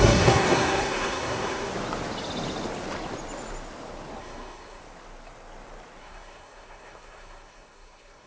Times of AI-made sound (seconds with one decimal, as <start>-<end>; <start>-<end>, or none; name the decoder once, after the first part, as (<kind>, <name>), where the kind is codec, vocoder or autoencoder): 0.0-1.7 (codec, SNAC); 4.2-4.8; 6.0-8.3